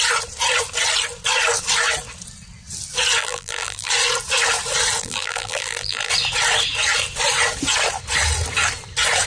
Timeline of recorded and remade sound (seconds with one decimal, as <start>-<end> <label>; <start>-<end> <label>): 0.0-3.2 recorded; 3.2-3.9 remade; 3.9-5.0 recorded; 5.0-6.1 remade; 6.1-9.3 recorded